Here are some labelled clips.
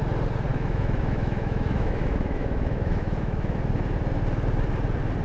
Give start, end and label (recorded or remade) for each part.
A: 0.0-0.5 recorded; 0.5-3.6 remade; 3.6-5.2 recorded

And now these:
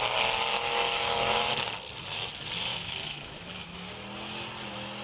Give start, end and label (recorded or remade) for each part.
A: 0.0-0.5 recorded; 0.5-1.5 remade; 1.5-2.7 recorded; 2.7-3.9 remade; 3.9-5.0 recorded